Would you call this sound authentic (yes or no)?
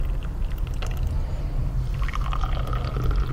yes